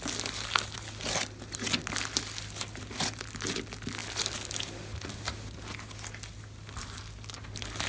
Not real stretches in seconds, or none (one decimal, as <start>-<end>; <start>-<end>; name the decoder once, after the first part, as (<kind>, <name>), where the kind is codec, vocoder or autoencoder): none